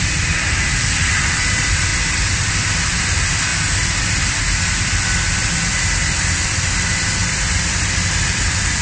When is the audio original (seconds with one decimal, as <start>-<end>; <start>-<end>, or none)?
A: 1.9-2.5; 3.5-5.3